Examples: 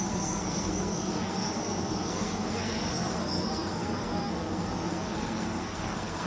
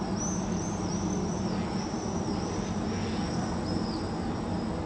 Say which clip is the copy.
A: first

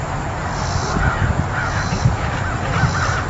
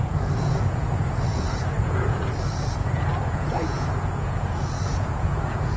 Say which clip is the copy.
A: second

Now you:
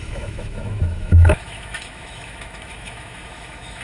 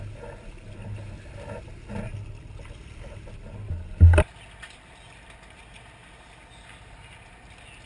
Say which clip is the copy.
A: first